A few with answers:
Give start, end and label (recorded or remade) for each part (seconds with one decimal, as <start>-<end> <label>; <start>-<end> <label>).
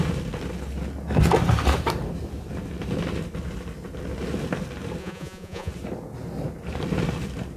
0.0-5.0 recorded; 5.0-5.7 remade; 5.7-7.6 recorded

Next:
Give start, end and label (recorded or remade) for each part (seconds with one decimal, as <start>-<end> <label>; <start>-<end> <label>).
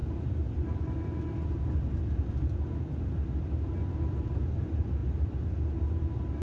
0.0-6.4 recorded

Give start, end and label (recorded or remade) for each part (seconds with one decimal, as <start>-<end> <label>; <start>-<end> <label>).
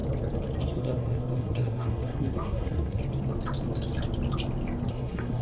0.0-0.6 recorded; 0.6-3.0 remade; 3.0-4.9 recorded; 4.9-5.4 remade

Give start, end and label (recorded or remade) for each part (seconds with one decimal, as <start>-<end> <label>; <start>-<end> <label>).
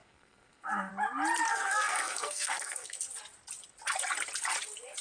0.0-0.9 remade; 0.9-1.5 recorded; 1.5-3.0 remade; 3.0-5.0 recorded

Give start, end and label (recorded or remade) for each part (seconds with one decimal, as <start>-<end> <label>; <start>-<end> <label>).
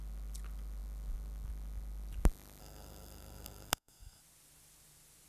0.0-2.6 recorded; 2.6-4.2 remade; 4.2-5.3 recorded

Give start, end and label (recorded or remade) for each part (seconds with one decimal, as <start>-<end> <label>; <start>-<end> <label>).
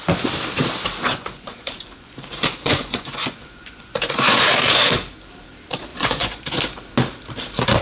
0.0-1.1 recorded; 1.1-4.4 remade; 4.4-5.9 recorded; 5.9-6.6 remade; 6.6-7.8 recorded